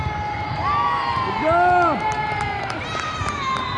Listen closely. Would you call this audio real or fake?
real